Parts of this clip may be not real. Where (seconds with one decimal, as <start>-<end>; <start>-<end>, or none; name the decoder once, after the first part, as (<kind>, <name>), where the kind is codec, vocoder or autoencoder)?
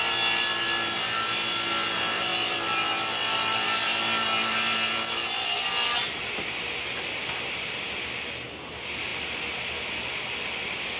none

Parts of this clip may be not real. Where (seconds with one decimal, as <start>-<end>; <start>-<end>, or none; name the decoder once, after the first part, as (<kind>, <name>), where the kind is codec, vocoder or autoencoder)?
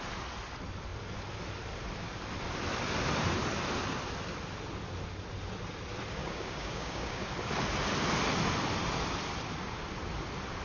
6.2-7.3 (codec, DAC)